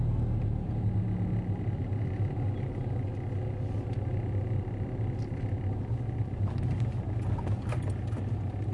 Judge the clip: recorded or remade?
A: recorded